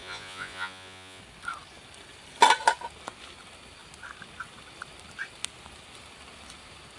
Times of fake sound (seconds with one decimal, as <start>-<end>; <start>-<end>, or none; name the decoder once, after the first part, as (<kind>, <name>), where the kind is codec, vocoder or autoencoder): 0.0-1.2 (vocoder, Vocos)